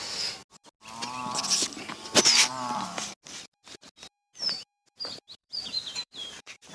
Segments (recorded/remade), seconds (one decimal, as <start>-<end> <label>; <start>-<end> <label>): 0.0-5.4 recorded; 5.4-6.7 remade